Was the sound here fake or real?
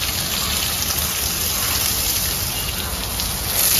real